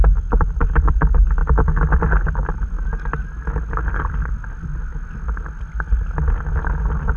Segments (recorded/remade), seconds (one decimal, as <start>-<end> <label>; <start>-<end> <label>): 0.0-7.2 recorded